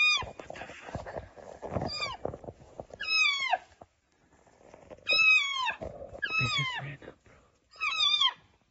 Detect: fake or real real